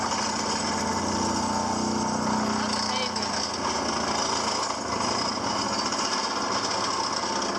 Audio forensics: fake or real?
real